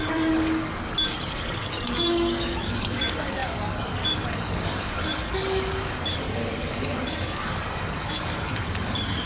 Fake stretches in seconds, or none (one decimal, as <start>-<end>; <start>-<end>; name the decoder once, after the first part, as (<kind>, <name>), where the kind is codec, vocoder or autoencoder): 0.0-9.3 (codec, DAC)